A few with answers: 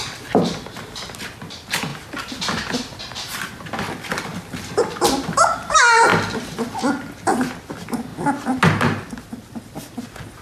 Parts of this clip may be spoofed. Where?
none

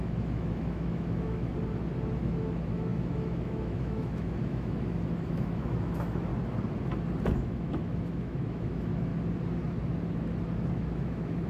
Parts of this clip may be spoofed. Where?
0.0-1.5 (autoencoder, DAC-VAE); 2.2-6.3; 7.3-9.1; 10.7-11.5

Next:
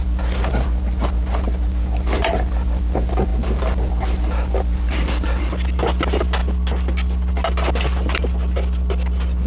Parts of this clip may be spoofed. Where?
none